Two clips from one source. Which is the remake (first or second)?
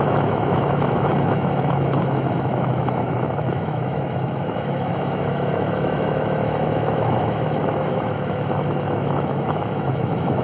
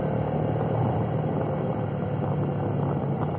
first